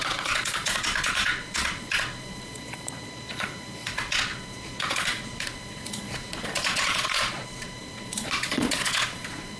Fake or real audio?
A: fake